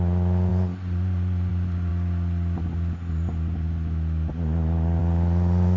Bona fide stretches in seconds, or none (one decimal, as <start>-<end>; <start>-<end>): 0.0-5.8